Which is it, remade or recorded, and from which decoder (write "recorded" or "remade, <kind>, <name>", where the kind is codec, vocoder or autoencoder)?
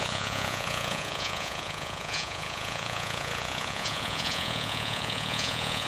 remade, vocoder, Vocos